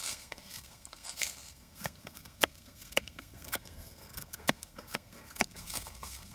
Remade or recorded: remade